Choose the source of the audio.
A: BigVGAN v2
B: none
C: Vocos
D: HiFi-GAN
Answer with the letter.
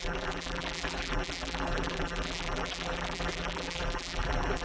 A